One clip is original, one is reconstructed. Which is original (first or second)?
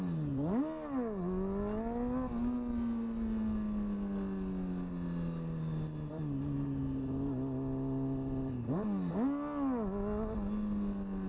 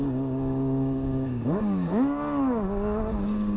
first